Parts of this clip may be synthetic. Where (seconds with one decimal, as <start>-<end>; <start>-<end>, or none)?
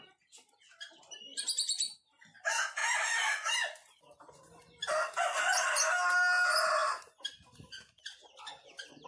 none